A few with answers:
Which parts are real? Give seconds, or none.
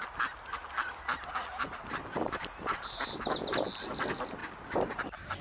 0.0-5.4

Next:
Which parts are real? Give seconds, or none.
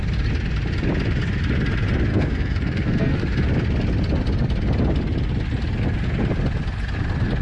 0.0-2.1; 3.2-7.4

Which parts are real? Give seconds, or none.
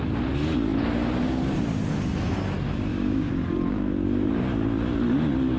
0.0-2.9; 3.4-5.6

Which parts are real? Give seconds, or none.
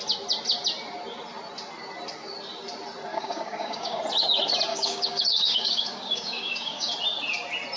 0.0-3.1; 4.0-4.7; 6.9-7.8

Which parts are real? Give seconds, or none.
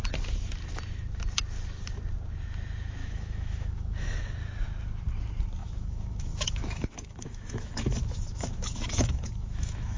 0.0-3.0; 4.3-5.6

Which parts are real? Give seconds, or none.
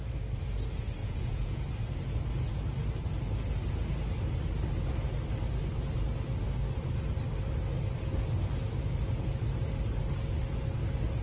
0.0-1.0; 1.6-11.2